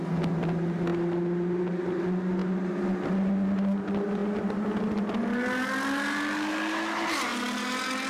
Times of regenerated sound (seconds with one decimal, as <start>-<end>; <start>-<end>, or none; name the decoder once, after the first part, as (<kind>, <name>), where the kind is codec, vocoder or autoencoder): none